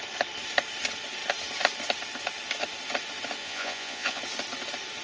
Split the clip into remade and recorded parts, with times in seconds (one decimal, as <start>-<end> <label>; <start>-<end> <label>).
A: 0.0-3.4 recorded; 3.4-4.2 remade; 4.2-5.0 recorded